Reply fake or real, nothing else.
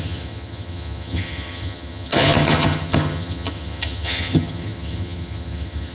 fake